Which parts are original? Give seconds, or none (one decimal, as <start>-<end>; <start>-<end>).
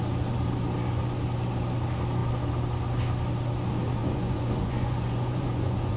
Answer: 0.0-4.0